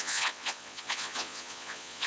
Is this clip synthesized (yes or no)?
yes